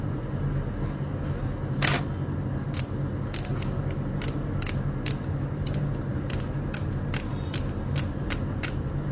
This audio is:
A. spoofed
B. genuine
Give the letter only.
B